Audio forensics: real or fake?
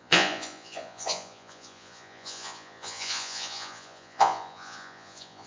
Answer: fake